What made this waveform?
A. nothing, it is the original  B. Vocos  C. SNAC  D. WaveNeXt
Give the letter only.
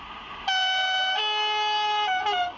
A